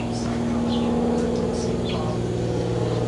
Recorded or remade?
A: recorded